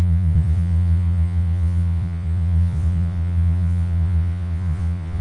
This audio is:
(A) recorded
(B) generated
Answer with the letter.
B